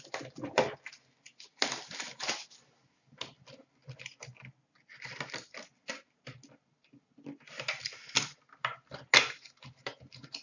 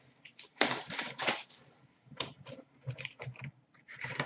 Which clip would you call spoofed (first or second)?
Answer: second